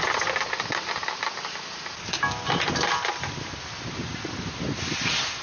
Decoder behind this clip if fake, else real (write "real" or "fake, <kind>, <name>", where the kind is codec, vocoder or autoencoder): real